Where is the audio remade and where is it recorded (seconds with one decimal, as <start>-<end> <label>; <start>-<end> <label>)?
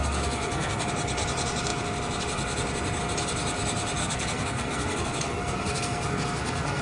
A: 0.0-0.9 remade; 0.9-4.0 recorded; 4.0-6.8 remade